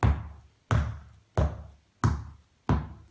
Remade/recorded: recorded